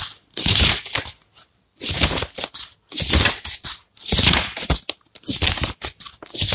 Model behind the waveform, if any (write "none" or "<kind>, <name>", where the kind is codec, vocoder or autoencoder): none